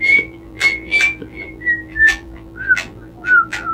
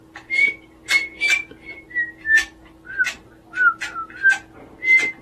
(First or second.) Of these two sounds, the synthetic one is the first